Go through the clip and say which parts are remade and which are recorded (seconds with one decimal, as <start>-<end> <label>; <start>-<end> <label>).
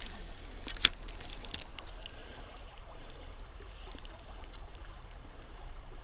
0.0-2.2 recorded; 2.2-6.0 remade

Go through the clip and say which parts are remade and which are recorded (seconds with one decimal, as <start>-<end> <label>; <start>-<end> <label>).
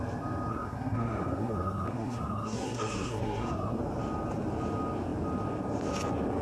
0.0-0.5 recorded; 0.5-3.8 remade; 3.8-6.4 recorded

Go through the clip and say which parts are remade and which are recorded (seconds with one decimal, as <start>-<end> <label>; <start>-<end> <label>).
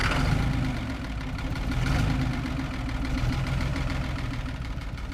0.0-3.1 recorded; 3.1-5.1 remade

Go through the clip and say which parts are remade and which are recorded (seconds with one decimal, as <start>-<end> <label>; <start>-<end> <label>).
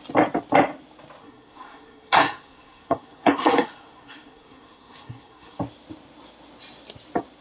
0.0-1.2 recorded; 1.2-5.6 remade; 5.6-7.4 recorded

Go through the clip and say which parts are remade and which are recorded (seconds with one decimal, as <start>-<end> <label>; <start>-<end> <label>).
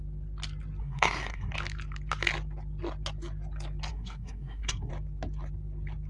0.0-0.8 recorded; 0.8-1.5 remade; 1.5-3.9 recorded; 3.9-4.9 remade; 4.9-6.1 recorded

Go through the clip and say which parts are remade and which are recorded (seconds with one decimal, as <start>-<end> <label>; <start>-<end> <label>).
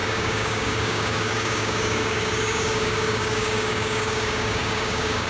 0.0-5.3 remade